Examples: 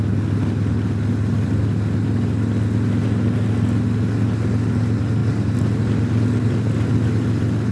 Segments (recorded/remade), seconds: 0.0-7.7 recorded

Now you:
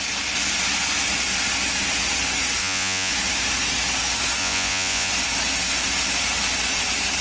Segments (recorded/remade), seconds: 0.0-2.6 recorded; 2.6-3.1 remade; 3.1-4.4 recorded; 4.4-5.1 remade; 5.1-7.2 recorded

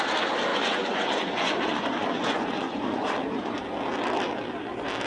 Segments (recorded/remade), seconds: 0.0-0.5 recorded; 0.5-3.6 remade; 3.6-5.1 recorded

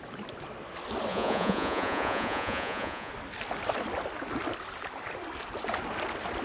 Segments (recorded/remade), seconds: 0.0-1.1 recorded; 1.1-3.1 remade; 3.1-6.4 recorded

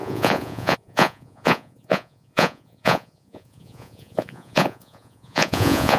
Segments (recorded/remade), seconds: 0.0-6.0 remade